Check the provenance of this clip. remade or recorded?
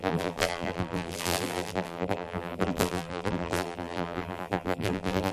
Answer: remade